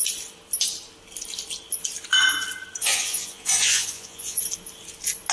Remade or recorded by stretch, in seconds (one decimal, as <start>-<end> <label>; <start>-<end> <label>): 0.0-2.8 recorded; 2.8-4.4 remade; 4.4-5.3 recorded